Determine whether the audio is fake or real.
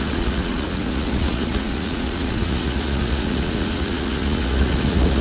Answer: fake